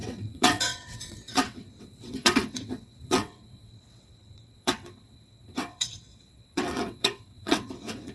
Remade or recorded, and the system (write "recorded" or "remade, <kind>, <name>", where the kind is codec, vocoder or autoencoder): remade, vocoder, WaveNeXt